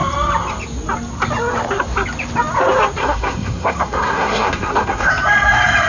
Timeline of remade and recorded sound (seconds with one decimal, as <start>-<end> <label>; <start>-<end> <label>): 0.0-3.0 recorded; 3.0-5.1 remade; 5.1-5.9 recorded